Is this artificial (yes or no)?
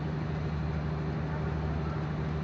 no